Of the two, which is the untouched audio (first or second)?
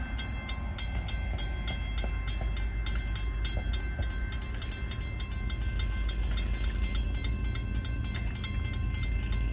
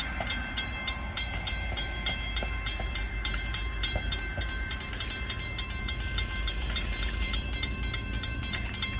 first